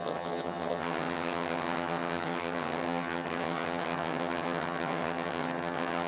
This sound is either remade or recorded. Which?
remade